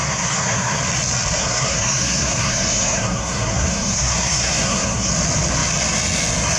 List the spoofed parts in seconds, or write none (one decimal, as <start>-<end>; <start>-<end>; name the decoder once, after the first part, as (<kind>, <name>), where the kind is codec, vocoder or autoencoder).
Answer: 0.0-0.8 (codec, SNAC); 1.4-5.1